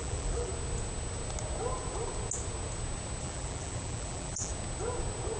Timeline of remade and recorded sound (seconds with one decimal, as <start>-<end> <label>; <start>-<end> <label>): 0.0-0.5 remade; 0.5-3.2 recorded; 3.2-4.5 remade; 4.5-5.4 recorded